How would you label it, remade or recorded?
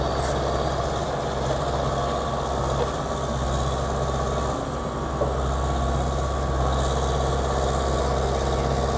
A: recorded